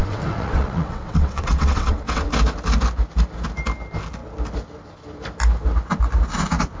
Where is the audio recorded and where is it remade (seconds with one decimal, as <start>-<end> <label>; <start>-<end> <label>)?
0.0-2.3 remade; 2.3-6.8 recorded